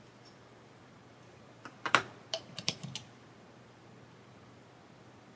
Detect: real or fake fake